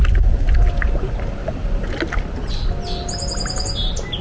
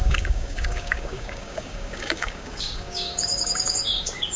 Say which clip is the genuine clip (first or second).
first